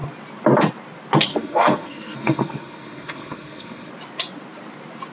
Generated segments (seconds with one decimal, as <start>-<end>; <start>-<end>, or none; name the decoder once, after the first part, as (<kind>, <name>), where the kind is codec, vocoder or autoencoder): 1.3-3.9 (codec, SNAC)

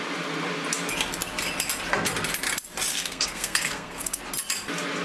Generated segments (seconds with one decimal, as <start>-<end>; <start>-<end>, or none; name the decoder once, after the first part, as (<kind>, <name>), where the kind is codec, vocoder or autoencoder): 2.9-4.2 (codec, SNAC)

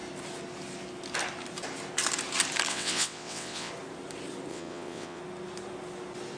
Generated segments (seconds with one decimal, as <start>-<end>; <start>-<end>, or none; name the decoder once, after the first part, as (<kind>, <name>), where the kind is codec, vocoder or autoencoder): 2.7-3.7 (vocoder, WaveNeXt); 4.5-5.2

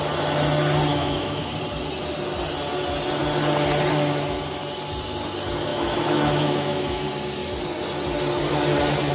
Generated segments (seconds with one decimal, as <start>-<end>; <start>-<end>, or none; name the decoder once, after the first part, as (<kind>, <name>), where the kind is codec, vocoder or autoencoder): 0.9-1.5 (autoencoder, DAC-VAE); 5.7-7.0

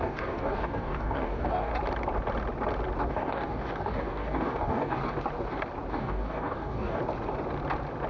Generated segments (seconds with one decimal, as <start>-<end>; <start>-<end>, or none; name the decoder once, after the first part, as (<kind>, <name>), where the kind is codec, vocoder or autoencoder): 0.0-1.7 (codec, DAC); 3.1-5.0; 5.9-7.0

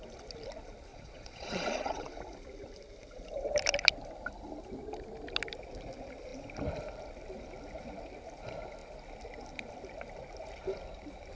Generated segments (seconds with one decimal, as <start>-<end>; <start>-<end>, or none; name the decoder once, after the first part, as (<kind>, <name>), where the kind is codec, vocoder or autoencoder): 0.9-2.2 (vocoder, Vocos)

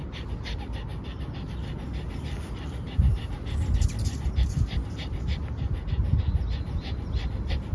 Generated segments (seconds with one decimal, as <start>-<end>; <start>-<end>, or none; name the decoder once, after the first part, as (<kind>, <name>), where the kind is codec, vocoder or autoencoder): none